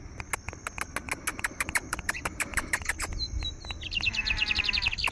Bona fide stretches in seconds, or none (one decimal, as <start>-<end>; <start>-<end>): 0.0-1.3; 2.9-5.1